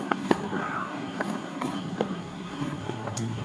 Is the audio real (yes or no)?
no